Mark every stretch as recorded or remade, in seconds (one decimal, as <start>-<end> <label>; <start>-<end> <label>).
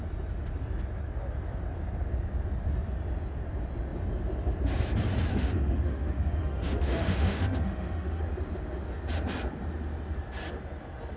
0.0-5.3 recorded; 5.3-8.2 remade; 8.2-11.2 recorded